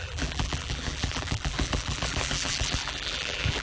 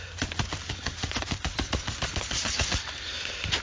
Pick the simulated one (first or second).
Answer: first